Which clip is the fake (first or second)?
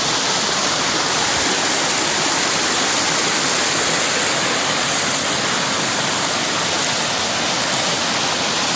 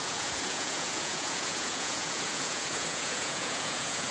second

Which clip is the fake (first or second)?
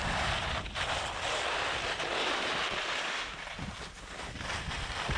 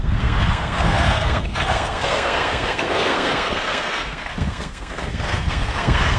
second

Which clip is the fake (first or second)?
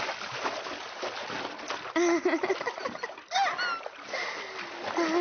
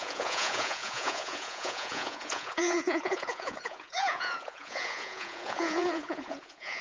second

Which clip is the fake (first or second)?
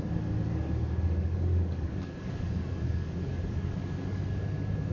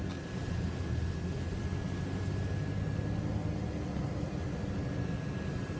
first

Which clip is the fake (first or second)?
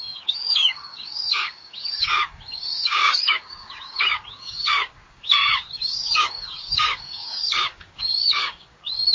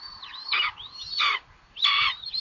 first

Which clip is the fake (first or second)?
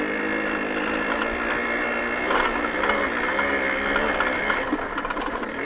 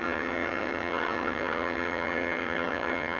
second